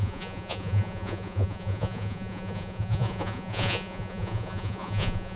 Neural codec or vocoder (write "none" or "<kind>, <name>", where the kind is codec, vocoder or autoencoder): vocoder, Vocos